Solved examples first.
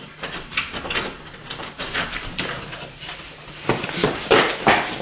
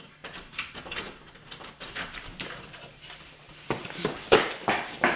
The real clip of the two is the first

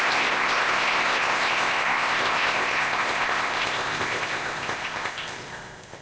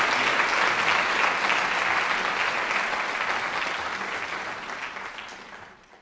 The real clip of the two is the second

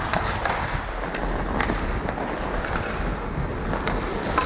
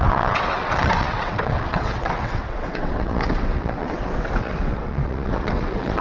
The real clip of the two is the first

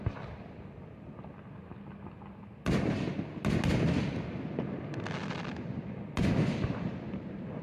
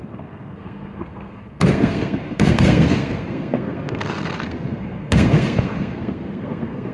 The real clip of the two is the first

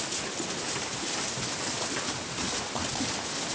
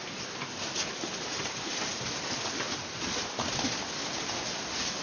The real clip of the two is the first